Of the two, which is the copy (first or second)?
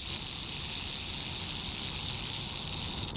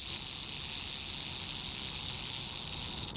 first